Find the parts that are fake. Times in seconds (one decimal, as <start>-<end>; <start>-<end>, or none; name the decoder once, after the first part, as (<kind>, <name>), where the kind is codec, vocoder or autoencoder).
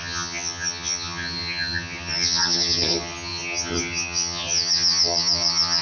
0.0-5.8 (vocoder, HiFi-GAN)